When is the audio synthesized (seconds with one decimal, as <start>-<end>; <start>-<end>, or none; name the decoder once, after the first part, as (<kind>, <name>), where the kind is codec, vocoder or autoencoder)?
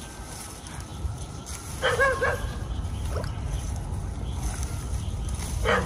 none